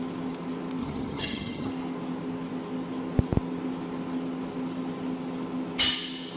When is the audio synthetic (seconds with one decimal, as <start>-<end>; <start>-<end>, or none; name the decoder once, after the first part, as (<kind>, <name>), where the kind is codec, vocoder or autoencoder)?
0.8-1.7 (vocoder, HiFi-GAN)